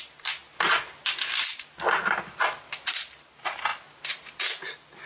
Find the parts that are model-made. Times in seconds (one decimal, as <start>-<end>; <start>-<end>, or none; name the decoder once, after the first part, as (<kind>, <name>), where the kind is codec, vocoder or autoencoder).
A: none